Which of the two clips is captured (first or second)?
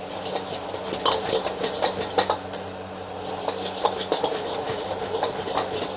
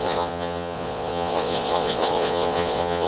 first